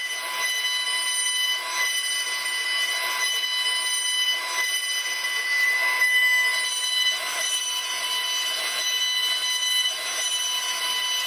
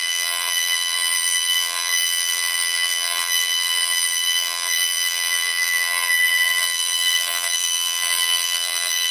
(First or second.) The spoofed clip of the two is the second